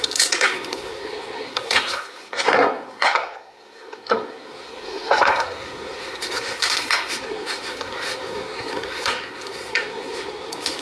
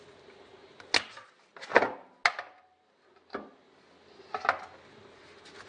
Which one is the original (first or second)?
second